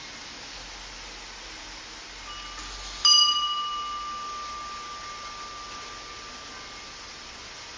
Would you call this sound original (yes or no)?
yes